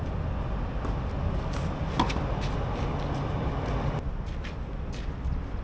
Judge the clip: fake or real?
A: real